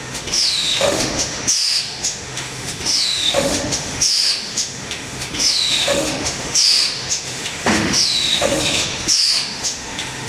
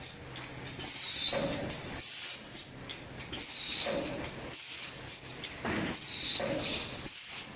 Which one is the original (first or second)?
second